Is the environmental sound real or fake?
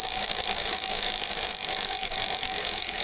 fake